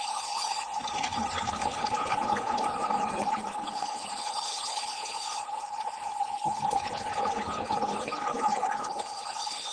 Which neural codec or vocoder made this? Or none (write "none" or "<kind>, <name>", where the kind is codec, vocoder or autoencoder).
codec, HILCodec